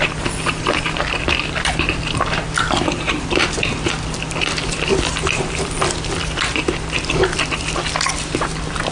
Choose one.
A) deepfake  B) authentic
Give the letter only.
A